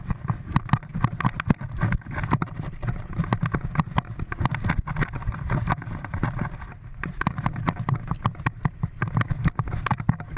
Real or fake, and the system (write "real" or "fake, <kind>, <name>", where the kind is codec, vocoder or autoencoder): real